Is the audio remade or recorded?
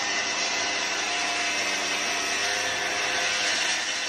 recorded